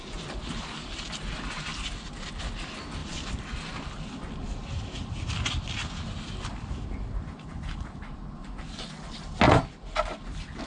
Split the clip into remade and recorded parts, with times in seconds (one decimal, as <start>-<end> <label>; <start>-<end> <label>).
0.0-10.7 recorded